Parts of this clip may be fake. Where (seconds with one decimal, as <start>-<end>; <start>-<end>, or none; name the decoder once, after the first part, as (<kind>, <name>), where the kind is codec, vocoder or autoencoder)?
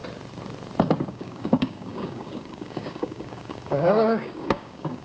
1.1-5.0 (codec, DAC)